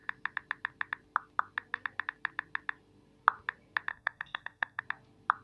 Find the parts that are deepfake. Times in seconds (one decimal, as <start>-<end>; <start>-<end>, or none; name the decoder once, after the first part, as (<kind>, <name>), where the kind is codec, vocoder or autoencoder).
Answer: 3.9-4.8 (codec, SNAC)